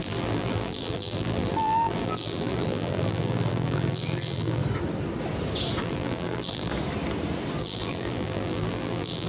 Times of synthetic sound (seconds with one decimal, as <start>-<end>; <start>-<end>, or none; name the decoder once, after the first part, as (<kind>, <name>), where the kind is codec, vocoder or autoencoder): 0.0-4.6 (vocoder, BigVGAN v2); 5.8-6.7; 7.6-9.3